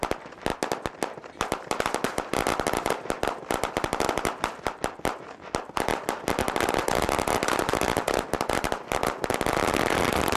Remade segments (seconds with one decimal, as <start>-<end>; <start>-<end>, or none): none